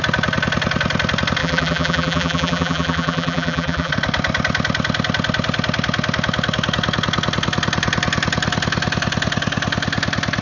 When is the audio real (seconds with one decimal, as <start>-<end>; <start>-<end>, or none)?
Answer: 0.0-1.4; 3.9-10.4